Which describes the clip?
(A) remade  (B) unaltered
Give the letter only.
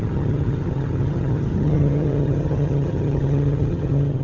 A